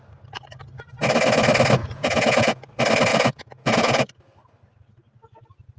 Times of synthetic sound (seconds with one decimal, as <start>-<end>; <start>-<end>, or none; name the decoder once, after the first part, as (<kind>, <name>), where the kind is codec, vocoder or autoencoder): 1.8-2.6 (vocoder, Vocos); 3.1-4.1